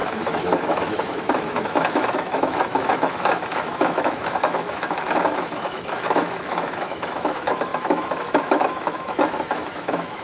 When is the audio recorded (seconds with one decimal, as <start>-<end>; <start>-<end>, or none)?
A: none